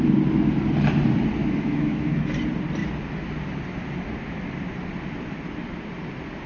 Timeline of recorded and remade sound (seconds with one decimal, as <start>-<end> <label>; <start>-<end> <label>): 0.0-1.4 recorded; 1.4-2.3 remade; 2.3-6.5 recorded